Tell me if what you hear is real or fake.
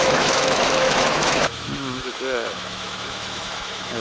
fake